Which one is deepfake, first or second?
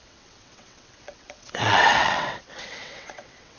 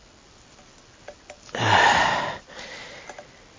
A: first